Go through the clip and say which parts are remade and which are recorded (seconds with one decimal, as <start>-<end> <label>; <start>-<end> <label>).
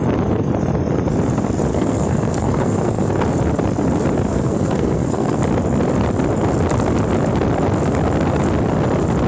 0.0-1.7 recorded; 1.7-3.1 remade; 3.1-4.3 recorded; 4.3-5.4 remade; 5.4-9.3 recorded